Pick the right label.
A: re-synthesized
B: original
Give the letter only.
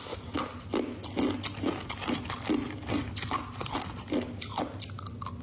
B